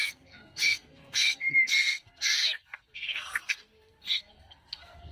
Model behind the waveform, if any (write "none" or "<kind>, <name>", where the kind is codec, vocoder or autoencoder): codec, SNAC